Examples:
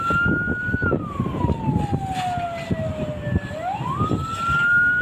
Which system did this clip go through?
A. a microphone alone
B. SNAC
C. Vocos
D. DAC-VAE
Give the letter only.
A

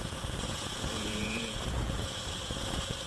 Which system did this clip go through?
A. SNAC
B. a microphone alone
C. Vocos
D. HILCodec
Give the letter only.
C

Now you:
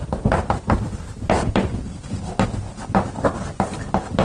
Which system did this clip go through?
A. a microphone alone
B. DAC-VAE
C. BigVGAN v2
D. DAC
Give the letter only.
A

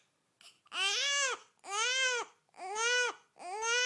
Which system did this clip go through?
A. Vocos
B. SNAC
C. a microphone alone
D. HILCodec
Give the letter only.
C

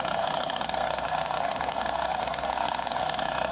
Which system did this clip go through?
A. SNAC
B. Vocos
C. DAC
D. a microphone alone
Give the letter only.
A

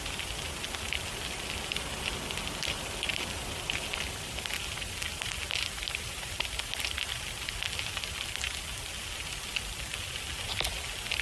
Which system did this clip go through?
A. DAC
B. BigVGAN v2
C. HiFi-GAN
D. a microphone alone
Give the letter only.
D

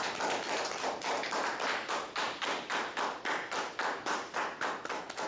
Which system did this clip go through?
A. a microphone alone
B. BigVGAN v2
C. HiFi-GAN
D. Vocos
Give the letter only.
A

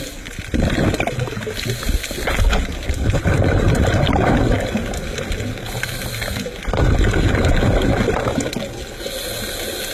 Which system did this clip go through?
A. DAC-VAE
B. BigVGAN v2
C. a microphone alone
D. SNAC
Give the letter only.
C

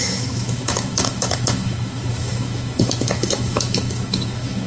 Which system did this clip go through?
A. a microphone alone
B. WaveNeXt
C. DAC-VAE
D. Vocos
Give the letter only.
C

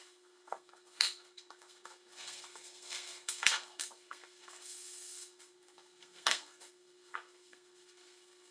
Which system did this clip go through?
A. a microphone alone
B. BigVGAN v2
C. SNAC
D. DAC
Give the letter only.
C